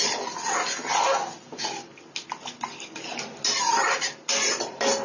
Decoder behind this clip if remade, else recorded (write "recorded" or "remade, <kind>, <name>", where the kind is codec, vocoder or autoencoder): recorded